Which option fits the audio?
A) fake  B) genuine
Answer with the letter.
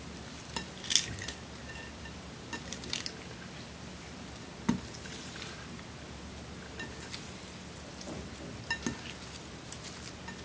B